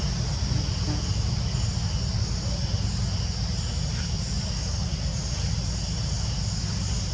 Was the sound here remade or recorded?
recorded